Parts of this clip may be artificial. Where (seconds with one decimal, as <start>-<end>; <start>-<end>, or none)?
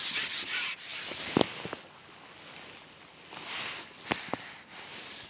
none